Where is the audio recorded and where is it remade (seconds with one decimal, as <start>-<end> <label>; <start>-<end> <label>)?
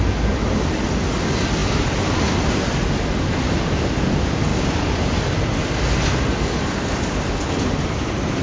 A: 0.0-8.4 recorded